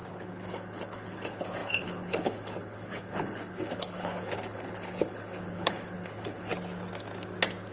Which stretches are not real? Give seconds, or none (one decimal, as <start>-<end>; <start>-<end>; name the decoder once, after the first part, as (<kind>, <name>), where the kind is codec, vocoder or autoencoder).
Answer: 0.0-6.5 (codec, HILCodec)